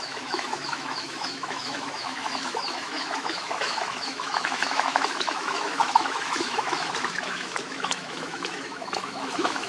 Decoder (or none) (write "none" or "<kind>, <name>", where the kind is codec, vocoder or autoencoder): autoencoder, DAC-VAE